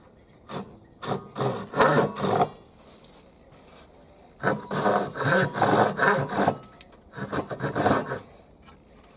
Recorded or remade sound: recorded